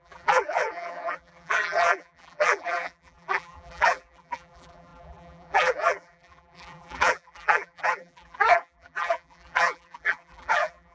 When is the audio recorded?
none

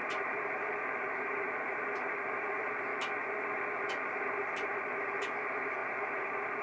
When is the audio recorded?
2.9-3.8

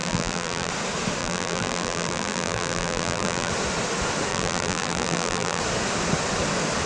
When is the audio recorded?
0.7-1.2; 3.5-4.3; 5.6-6.9